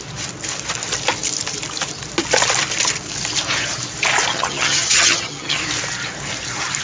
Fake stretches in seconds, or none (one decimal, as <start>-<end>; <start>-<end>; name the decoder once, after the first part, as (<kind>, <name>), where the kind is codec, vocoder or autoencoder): 4.3-5.6 (vocoder, HiFi-GAN)